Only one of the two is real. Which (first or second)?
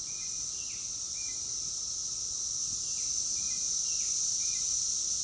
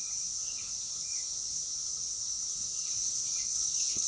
first